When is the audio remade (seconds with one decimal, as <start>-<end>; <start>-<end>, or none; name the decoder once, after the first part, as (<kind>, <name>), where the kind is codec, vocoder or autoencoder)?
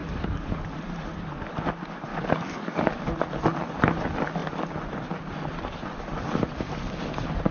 0.0-0.6 (codec, DAC); 2.1-3.1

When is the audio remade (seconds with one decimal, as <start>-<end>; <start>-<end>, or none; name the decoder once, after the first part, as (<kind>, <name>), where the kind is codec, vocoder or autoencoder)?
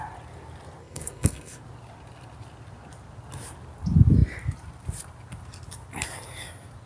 0.8-1.6 (codec, SNAC)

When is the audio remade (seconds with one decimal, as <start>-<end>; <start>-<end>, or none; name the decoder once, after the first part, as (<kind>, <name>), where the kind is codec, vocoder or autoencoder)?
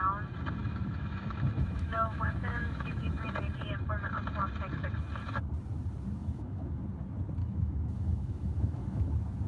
0.6-3.2 (autoencoder, DAC-VAE); 6.2-6.8; 7.4-9.1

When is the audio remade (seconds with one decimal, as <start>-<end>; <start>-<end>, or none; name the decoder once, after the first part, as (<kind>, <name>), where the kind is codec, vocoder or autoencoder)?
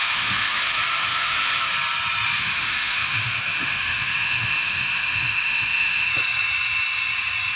0.0-1.7 (autoencoder, DAC-VAE); 2.4-6.1